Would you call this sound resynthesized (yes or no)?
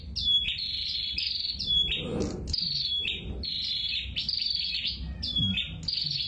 no